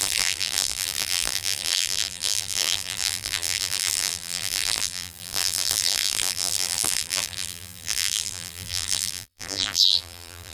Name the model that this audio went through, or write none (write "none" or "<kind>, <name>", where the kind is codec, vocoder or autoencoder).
vocoder, BigVGAN v2